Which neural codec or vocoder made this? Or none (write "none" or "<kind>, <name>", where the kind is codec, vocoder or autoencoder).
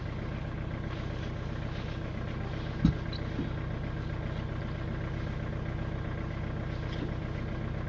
none